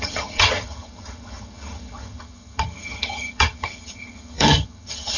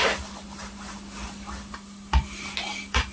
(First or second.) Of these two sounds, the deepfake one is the first